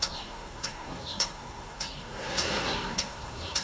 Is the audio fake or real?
fake